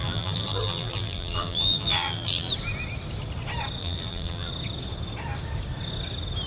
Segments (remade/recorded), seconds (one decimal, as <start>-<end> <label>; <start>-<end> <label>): 0.0-2.5 remade; 2.5-3.8 recorded; 3.8-4.5 remade; 4.5-6.5 recorded